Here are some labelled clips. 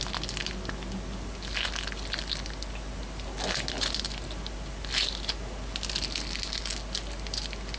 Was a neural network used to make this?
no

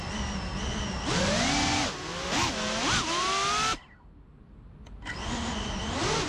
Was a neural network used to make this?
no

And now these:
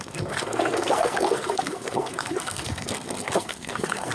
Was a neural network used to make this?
yes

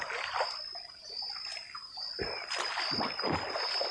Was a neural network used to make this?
no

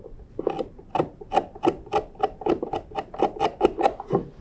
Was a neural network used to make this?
no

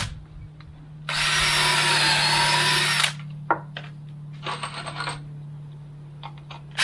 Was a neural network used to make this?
no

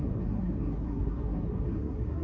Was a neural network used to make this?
yes